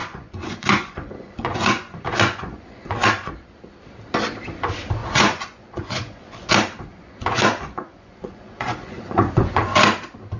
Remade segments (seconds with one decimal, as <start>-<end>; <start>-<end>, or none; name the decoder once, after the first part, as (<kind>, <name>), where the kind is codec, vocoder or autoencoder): 0.0-3.3 (vocoder, Vocos); 5.0-6.5; 6.9-9.6